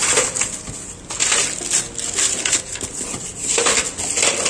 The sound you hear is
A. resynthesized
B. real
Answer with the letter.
B